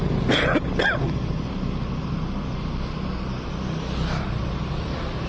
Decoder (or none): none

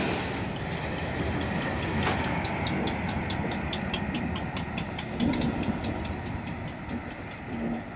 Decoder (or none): none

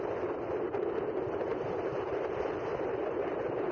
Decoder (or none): none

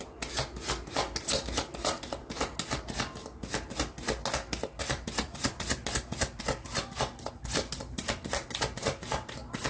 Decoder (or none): none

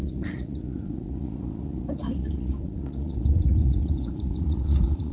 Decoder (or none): vocoder, Vocos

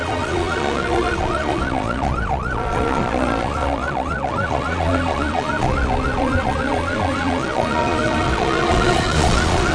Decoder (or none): vocoder, Vocos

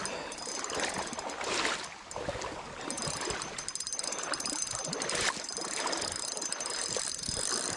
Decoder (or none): none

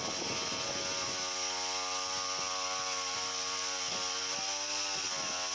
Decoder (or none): none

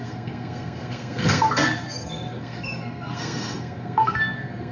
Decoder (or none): codec, SNAC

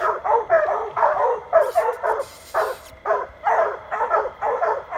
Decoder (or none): vocoder, BigVGAN v2